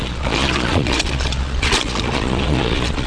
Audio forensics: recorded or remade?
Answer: remade